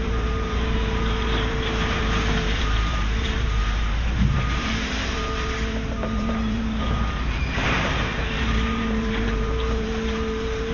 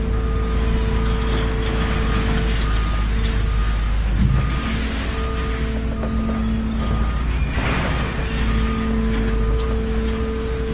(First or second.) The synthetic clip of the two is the first